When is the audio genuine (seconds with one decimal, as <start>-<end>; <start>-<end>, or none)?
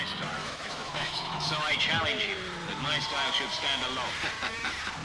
0.0-0.4; 1.8-5.0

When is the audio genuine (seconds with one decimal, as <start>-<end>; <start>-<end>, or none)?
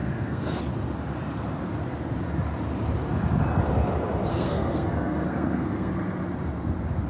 0.6-4.3; 5.9-7.1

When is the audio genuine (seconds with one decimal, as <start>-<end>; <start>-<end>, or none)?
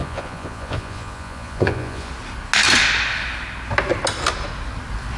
2.1-5.2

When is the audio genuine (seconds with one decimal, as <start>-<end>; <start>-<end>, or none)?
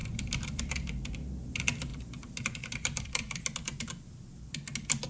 0.6-5.1